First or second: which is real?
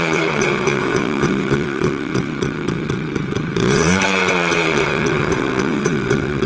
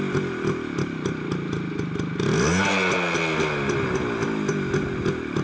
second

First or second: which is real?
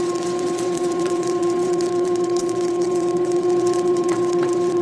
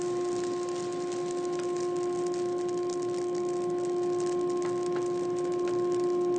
second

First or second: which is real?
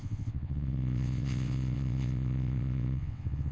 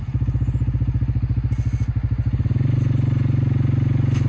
second